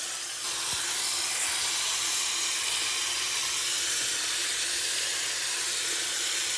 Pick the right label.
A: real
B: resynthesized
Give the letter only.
A